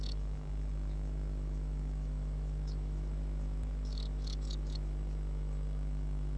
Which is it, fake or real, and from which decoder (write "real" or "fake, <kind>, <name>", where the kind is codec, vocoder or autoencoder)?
fake, autoencoder, DAC-VAE